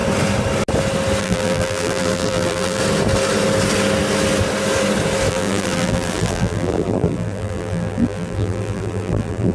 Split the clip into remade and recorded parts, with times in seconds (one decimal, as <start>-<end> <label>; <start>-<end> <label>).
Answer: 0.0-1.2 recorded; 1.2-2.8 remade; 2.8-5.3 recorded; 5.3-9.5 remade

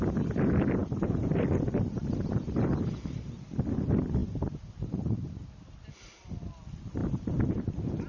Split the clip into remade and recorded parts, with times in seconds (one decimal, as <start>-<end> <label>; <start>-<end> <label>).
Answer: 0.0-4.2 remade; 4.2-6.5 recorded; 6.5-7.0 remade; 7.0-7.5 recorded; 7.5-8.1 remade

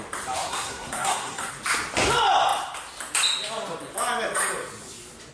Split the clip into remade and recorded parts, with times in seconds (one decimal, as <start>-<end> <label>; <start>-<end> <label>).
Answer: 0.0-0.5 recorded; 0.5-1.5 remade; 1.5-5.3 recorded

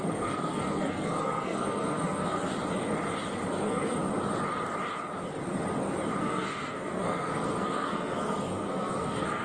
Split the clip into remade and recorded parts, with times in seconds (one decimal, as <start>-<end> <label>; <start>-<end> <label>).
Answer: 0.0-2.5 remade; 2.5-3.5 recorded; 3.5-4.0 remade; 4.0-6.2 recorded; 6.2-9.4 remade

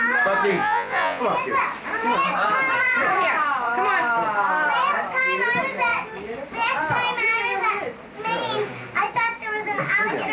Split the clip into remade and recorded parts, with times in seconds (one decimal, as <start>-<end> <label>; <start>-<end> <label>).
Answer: 0.0-0.5 recorded; 0.5-1.2 remade; 1.2-10.3 recorded